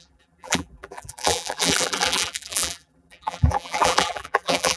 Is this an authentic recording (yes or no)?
no